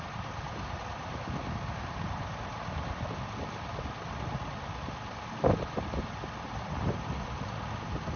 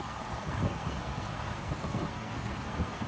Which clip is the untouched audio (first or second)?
first